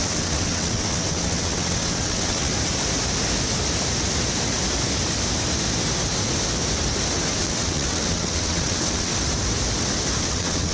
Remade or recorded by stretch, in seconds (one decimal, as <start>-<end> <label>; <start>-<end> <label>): 0.0-2.5 remade; 2.5-7.4 recorded; 7.4-9.1 remade; 9.1-10.2 recorded; 10.2-10.7 remade